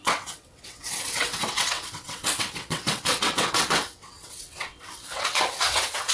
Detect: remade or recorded remade